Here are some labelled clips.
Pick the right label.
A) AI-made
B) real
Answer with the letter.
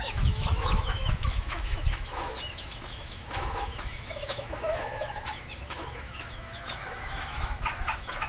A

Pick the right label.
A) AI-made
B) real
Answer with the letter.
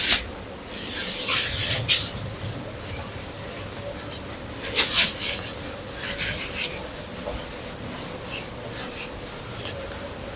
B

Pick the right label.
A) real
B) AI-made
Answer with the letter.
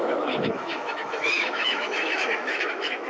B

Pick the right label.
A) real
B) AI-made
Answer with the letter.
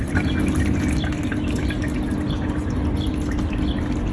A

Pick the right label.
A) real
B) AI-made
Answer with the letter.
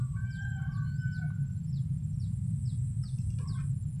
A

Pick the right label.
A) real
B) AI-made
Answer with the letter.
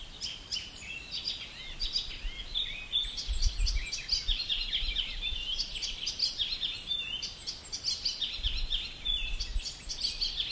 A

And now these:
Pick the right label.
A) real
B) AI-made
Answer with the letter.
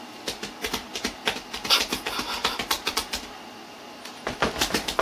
A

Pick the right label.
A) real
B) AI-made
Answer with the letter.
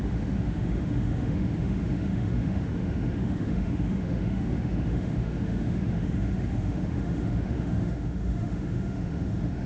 B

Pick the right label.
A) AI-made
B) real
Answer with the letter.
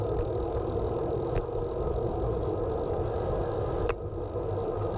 B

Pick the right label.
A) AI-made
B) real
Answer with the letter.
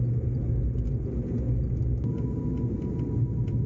B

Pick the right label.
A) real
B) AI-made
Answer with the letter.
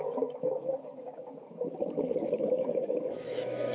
B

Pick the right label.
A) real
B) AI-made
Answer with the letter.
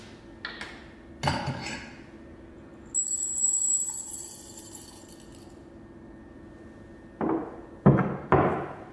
A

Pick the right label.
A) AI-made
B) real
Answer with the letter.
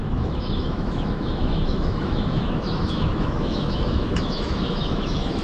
A